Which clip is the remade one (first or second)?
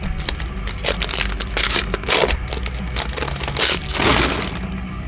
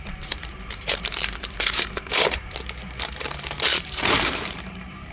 second